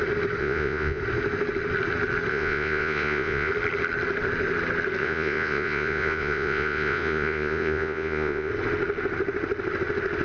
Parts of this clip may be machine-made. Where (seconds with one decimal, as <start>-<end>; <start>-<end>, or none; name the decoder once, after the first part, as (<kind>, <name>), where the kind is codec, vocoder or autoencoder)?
0.4-1.0 (vocoder, Vocos); 2.3-3.5; 5.0-8.5